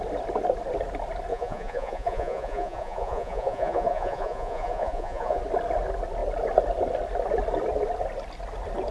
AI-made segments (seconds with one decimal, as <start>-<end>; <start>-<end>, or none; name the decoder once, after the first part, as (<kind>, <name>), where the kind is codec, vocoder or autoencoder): 1.3-5.4 (vocoder, Vocos)